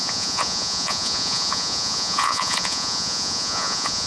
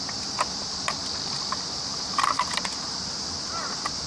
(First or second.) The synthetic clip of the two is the first